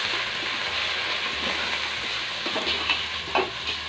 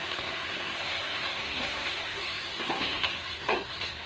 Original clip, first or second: first